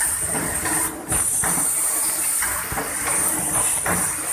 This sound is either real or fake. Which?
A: real